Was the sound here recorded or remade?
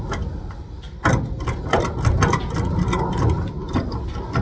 recorded